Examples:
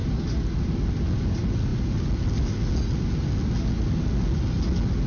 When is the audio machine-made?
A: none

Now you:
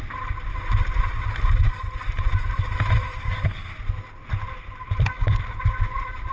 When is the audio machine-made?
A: 5.1-5.6